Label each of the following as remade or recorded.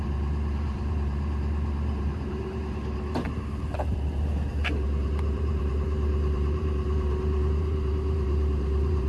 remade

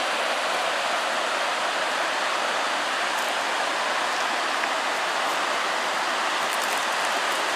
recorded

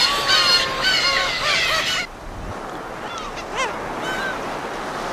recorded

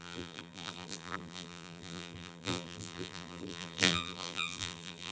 remade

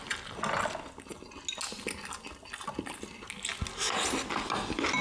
recorded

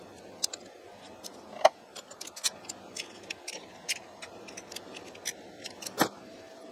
recorded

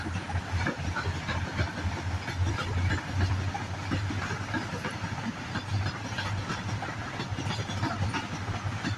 remade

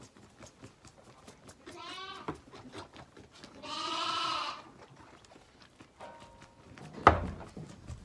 recorded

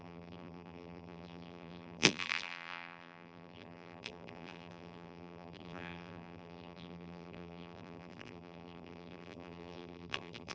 remade